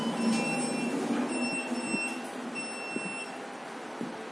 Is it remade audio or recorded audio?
recorded